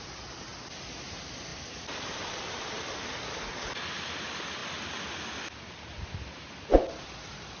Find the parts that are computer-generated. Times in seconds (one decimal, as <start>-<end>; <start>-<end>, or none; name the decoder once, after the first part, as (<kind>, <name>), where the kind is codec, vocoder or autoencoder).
1.5-3.0 (vocoder, BigVGAN v2)

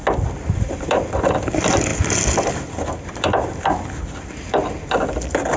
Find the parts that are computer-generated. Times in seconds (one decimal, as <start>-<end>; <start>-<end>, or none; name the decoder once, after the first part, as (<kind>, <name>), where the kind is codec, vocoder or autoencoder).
none

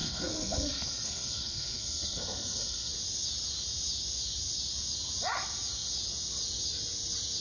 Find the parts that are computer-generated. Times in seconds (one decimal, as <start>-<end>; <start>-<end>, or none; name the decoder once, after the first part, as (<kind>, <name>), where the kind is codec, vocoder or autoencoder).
0.0-2.9 (codec, SNAC)